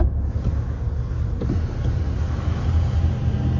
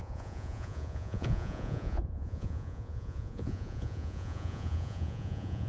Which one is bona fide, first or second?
first